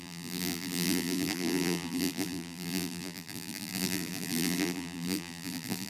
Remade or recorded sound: remade